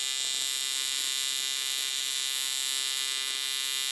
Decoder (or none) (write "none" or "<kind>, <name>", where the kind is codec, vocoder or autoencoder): none